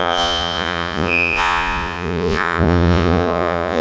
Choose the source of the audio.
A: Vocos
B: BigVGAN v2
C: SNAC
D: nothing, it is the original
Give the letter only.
A